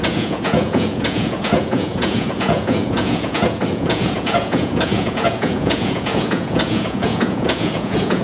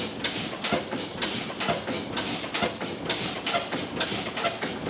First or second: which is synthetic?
first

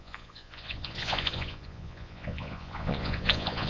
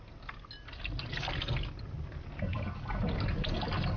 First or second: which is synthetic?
first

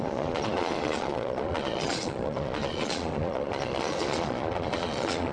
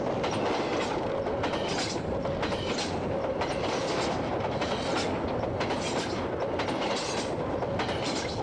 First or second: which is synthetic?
first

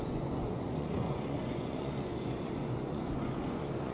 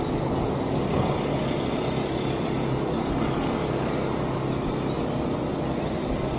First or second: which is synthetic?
first